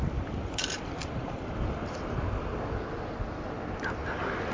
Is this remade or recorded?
recorded